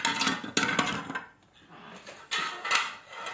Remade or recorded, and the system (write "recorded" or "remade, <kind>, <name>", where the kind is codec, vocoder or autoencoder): recorded